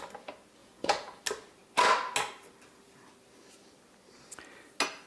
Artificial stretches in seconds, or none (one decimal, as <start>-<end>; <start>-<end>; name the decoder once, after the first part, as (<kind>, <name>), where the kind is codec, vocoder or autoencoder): 0.6-1.2 (vocoder, Vocos)